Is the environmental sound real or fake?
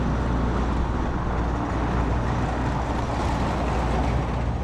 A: real